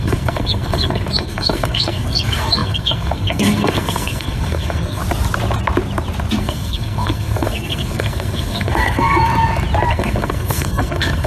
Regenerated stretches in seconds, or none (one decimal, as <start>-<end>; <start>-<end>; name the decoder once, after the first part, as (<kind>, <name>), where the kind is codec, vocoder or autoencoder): 0.0-5.0 (codec, SNAC); 6.4-9.3; 9.9-11.3